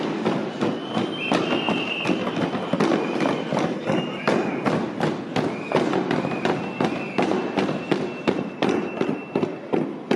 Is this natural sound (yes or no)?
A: yes